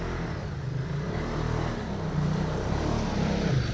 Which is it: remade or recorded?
remade